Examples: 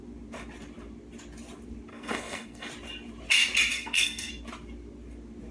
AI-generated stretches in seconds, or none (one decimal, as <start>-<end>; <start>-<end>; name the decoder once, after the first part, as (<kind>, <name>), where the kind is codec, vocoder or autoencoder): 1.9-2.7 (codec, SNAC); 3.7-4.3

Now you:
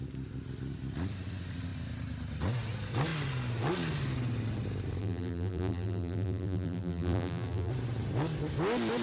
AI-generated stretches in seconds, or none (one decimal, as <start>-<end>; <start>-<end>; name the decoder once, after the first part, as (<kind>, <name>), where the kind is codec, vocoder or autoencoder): 5.0-7.7 (vocoder, BigVGAN v2)

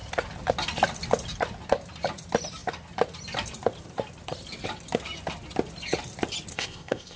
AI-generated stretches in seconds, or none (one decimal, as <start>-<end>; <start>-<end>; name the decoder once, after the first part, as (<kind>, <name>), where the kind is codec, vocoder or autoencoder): 6.5-7.2 (codec, ZipCodec)

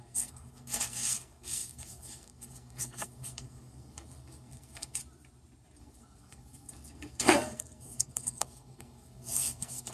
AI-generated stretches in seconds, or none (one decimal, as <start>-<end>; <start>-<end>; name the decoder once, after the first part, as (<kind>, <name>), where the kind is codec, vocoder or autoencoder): 0.0-5.0 (codec, SNAC); 5.8-9.9

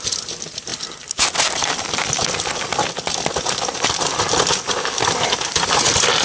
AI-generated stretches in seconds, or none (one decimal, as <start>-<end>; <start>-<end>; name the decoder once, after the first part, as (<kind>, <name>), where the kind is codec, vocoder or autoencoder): none

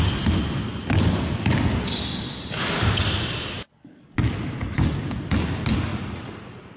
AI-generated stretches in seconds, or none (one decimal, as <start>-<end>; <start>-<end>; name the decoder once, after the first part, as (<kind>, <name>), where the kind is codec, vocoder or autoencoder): 5.9-6.8 (vocoder, Vocos)